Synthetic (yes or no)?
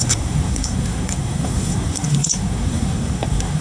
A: yes